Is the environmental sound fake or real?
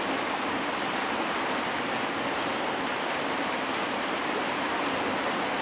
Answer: real